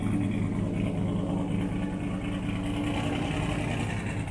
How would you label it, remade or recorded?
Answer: recorded